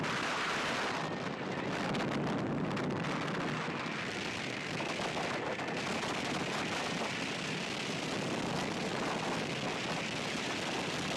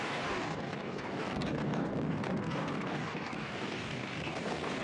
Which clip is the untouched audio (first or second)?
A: first